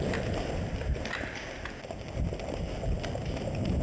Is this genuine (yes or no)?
yes